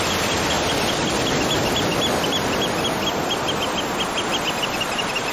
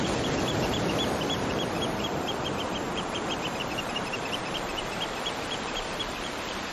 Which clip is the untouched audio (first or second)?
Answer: first